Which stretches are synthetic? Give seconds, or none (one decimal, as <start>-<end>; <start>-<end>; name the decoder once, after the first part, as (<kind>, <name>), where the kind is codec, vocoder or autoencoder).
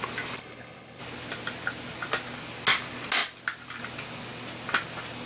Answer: 0.4-1.0 (codec, HILCodec)